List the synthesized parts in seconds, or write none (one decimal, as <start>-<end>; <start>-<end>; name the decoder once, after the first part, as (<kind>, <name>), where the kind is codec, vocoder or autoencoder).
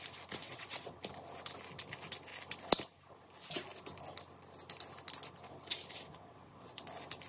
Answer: 0.4-1.0 (vocoder, WaveNeXt); 6.1-6.8